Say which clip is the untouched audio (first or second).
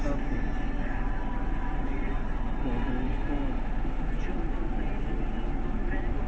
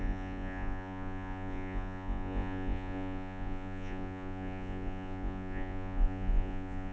first